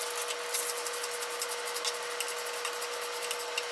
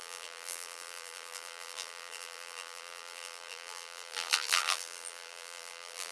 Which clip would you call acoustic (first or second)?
first